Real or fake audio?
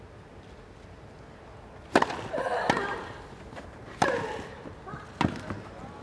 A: real